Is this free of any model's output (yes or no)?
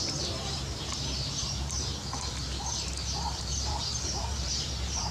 no